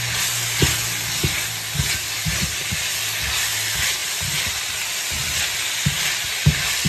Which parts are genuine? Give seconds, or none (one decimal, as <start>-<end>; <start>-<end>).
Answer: 0.0-6.9